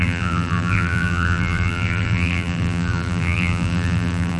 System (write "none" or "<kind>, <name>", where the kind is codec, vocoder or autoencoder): vocoder, BigVGAN v2